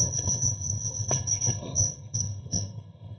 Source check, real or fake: fake